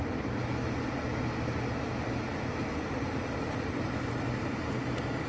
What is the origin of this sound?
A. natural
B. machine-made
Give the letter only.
A